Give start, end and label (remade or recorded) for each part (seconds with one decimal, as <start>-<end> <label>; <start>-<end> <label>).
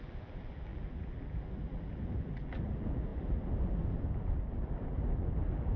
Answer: 0.0-5.8 remade